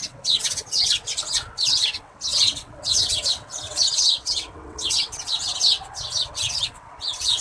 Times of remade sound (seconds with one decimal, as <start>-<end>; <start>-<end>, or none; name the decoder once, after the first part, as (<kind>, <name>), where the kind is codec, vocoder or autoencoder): 0.0-7.4 (vocoder, WaveNeXt)